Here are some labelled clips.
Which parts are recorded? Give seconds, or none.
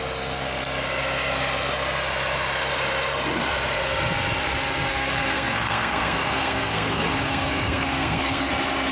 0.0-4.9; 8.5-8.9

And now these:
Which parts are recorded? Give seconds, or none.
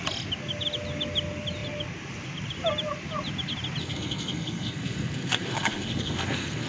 0.0-3.8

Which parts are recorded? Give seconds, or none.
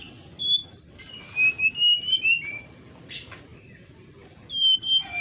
0.0-0.6; 1.2-1.9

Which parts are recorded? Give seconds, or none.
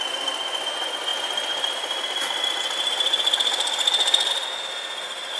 0.0-1.1; 4.3-5.4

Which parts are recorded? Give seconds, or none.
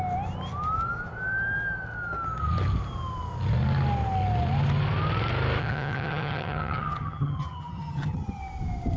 0.0-5.6; 8.4-9.0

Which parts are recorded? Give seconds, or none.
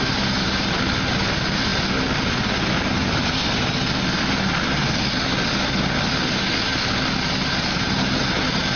0.0-8.8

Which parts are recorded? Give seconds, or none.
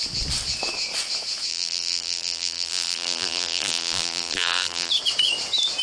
0.0-1.5; 4.9-5.8